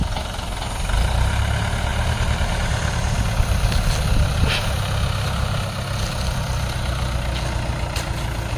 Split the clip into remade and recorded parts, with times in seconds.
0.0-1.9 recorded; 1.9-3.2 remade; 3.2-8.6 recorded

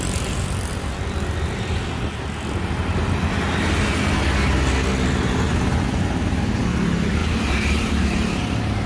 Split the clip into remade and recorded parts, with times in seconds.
0.0-7.2 recorded; 7.2-8.9 remade

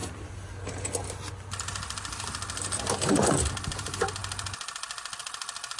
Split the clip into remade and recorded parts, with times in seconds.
0.0-3.5 remade; 3.5-5.8 recorded

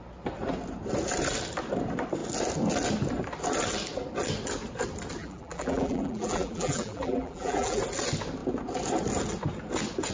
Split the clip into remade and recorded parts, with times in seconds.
0.0-5.2 recorded; 5.2-7.8 remade; 7.8-10.1 recorded